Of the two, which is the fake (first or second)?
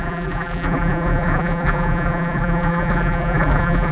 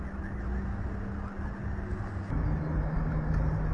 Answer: first